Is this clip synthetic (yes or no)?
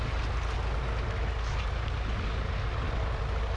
no